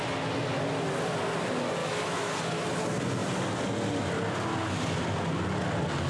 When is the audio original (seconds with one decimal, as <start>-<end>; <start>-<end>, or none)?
0.0-1.8; 2.3-6.1

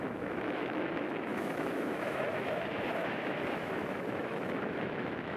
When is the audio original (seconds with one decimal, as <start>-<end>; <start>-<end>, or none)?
none

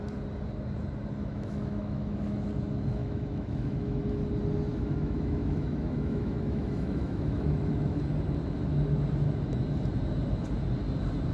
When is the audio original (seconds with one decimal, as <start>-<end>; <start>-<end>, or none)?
0.0-1.2; 2.5-3.0; 4.0-4.7; 8.0-11.3

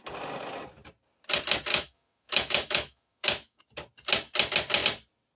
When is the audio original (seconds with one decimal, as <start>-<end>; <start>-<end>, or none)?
0.0-1.7; 3.6-5.4

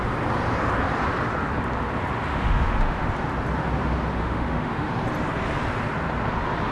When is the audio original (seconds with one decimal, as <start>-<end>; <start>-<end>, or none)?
0.0-2.3; 3.1-4.2; 4.9-6.7

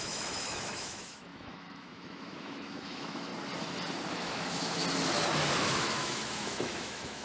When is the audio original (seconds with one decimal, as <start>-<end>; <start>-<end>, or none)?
3.3-4.1; 4.8-5.7

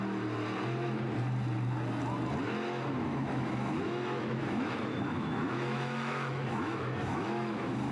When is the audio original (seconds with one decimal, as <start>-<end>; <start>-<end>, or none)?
0.0-3.1

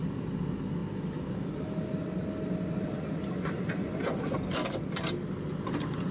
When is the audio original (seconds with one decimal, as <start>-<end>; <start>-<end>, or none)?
0.0-6.1